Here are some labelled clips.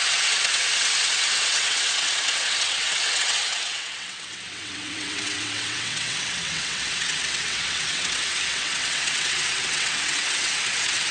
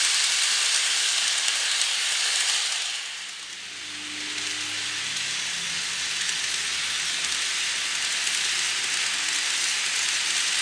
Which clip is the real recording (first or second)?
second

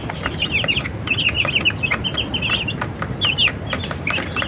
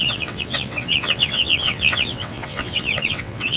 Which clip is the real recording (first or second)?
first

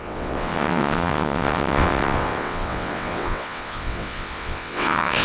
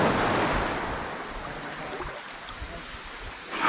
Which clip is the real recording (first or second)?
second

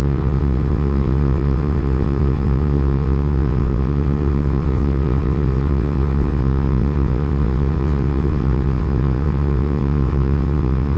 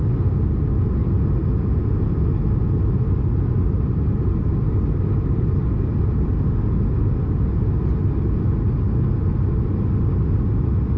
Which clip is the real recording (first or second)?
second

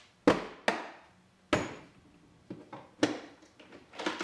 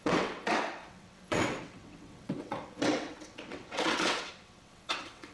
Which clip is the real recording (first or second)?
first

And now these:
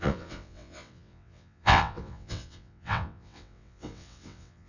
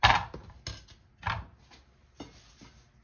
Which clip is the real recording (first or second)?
second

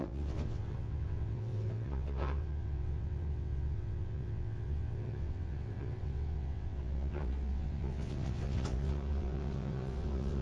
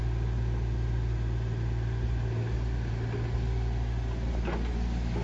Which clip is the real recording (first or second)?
second